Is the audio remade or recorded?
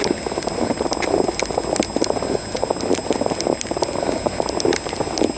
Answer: recorded